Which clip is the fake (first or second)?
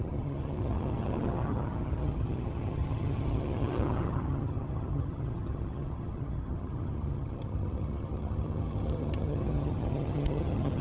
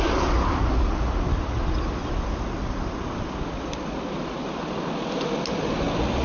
first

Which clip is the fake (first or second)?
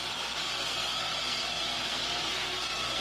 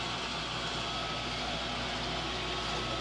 first